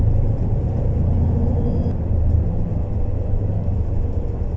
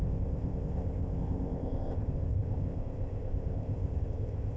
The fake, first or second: second